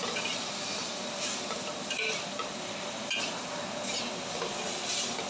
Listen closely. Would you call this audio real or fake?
real